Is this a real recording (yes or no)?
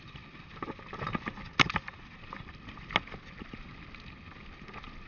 yes